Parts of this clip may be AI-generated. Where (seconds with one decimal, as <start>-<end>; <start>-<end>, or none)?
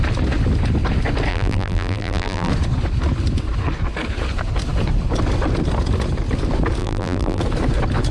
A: 1.3-2.5; 6.8-7.4